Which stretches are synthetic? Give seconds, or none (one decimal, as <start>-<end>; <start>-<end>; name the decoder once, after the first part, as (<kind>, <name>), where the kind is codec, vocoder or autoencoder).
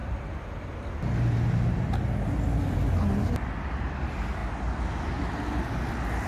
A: none